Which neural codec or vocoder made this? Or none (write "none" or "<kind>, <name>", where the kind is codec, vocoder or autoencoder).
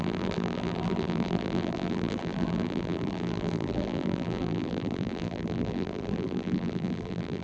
vocoder, BigVGAN v2